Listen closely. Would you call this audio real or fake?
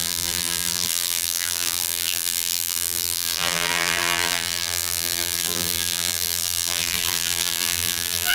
fake